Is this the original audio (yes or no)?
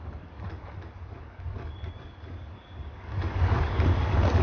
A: no